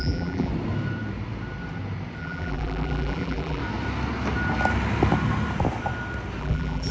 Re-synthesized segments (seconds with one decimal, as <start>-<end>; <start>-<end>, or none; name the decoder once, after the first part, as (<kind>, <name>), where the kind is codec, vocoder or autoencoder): 0.0-0.5 (vocoder, BigVGAN v2); 2.2-3.6; 6.4-6.9